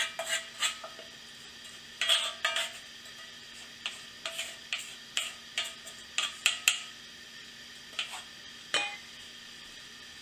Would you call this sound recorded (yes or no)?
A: yes